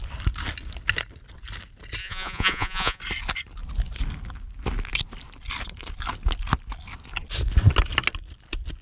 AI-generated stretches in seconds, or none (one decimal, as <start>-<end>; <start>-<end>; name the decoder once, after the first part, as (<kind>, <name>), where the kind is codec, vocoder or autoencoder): 2.0-3.0 (vocoder, Vocos)